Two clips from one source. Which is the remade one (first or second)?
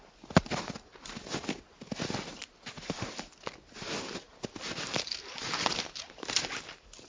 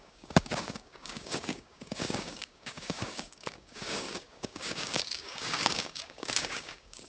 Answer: second